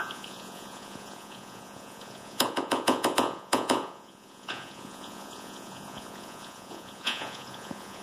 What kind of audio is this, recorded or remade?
remade